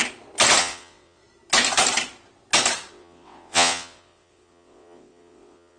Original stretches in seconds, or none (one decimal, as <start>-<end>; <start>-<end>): 0.0-0.6; 1.2-2.9